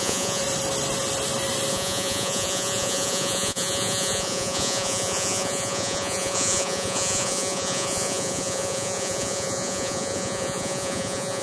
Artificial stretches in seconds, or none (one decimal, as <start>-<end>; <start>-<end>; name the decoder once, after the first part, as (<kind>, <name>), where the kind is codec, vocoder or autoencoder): 0.0-0.4 (vocoder, Vocos); 1.7-11.4